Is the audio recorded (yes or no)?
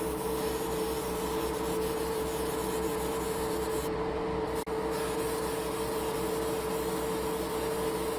yes